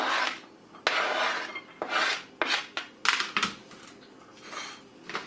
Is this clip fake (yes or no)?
no